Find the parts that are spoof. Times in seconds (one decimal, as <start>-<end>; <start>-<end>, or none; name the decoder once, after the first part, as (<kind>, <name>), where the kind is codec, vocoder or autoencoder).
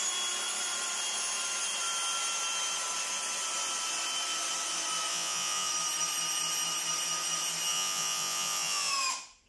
5.1-5.7 (vocoder, Vocos); 7.7-8.9